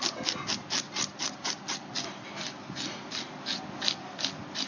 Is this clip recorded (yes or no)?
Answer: yes